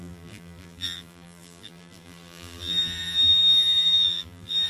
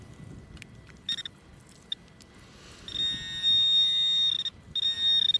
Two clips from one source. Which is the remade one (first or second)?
first